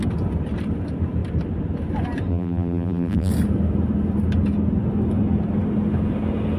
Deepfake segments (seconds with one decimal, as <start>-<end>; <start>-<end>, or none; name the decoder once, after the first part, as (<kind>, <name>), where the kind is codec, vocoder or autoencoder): 2.3-3.3 (vocoder, BigVGAN v2)